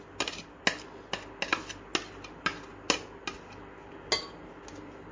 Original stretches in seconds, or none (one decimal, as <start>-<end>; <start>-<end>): 0.0-5.1